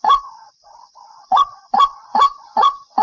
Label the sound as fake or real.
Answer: fake